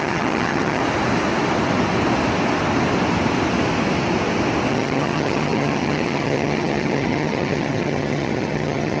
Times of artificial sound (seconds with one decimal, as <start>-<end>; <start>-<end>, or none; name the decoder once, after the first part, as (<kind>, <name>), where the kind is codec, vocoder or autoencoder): 0.0-0.8 (vocoder, HiFi-GAN); 4.7-9.0